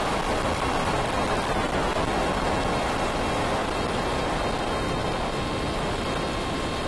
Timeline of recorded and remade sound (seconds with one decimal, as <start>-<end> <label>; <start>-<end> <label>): 0.0-6.9 recorded